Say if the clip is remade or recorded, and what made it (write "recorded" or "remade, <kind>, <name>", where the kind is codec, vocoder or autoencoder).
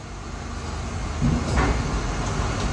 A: recorded